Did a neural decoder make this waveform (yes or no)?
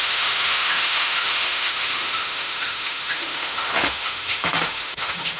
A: yes